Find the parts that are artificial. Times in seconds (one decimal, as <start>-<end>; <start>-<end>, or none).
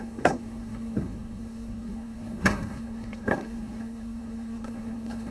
0.0-5.3